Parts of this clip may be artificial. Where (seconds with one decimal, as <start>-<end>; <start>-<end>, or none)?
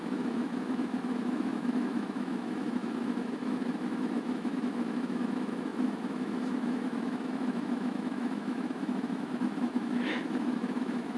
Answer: 0.0-11.2